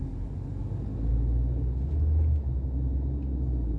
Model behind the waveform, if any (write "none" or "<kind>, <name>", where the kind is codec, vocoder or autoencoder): none